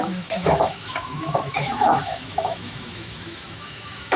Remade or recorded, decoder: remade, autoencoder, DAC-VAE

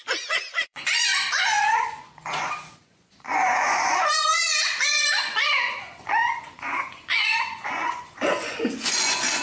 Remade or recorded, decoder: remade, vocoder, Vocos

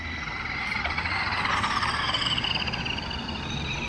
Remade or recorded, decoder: recorded